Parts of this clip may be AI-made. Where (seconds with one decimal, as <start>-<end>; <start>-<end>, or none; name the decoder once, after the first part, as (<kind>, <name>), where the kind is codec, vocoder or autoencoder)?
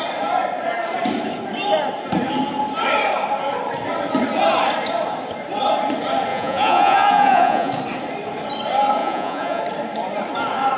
6.3-7.7 (vocoder, Vocos); 9.0-9.6